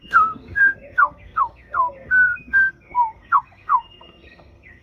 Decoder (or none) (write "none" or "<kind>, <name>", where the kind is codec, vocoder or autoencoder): codec, SNAC